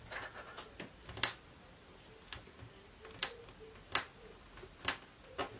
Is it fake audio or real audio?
real